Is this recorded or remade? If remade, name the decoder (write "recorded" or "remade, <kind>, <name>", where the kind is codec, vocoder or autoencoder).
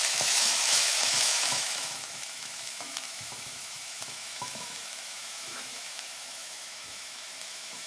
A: remade, autoencoder, DAC-VAE